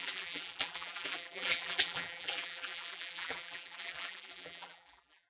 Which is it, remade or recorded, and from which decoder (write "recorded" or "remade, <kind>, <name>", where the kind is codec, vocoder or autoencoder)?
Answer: remade, vocoder, BigVGAN v2